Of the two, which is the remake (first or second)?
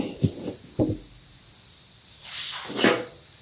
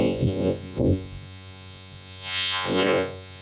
second